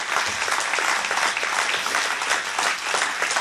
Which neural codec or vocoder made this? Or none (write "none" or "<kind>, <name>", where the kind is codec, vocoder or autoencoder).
none